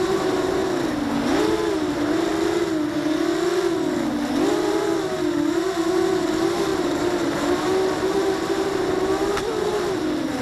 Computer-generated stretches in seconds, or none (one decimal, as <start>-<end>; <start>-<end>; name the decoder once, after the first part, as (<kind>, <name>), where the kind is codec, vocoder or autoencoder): 0.0-0.6 (vocoder, BigVGAN v2); 1.7-2.3; 4.5-10.4